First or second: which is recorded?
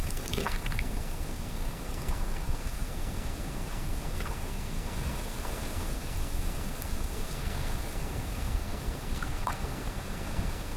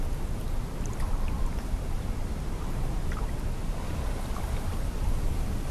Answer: second